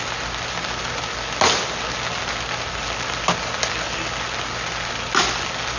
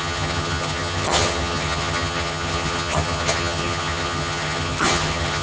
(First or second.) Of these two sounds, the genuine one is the first